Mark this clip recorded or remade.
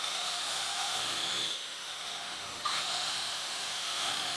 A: remade